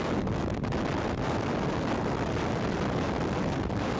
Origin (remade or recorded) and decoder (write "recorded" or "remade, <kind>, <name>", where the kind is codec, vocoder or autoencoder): recorded